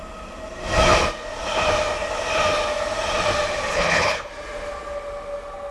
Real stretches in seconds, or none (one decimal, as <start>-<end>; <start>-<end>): 0.0-3.7; 4.3-5.7